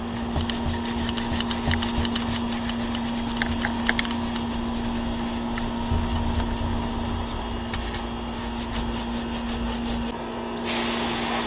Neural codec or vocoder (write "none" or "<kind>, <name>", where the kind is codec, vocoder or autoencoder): none